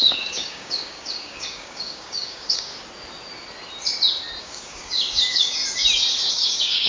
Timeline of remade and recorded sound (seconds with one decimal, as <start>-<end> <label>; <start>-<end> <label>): 0.0-2.7 remade; 2.7-4.4 recorded; 4.4-5.6 remade; 5.6-6.3 recorded; 6.3-6.9 remade